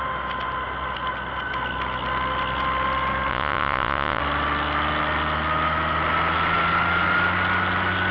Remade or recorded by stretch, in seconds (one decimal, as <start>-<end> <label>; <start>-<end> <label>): 0.0-3.3 recorded; 3.3-4.2 remade; 4.2-8.1 recorded